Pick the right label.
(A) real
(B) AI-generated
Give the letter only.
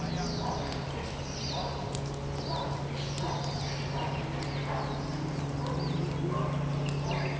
A